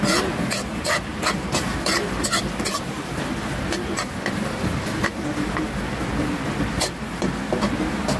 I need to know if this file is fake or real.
real